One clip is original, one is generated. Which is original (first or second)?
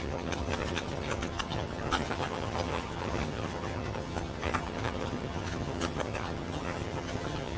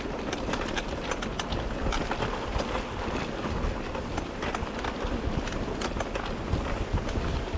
second